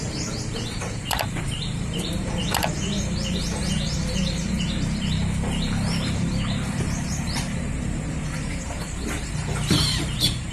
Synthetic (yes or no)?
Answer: yes